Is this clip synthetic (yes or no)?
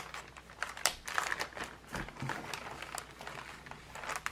no